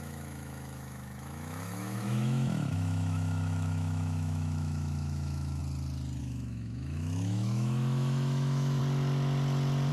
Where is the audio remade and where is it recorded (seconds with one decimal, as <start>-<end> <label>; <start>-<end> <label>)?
0.0-5.6 remade; 5.6-6.2 recorded; 6.2-8.8 remade; 8.8-9.9 recorded